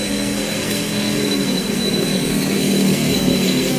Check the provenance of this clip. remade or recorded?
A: remade